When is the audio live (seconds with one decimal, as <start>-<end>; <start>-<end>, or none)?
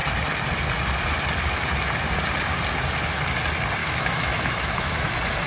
0.0-3.8; 5.1-5.5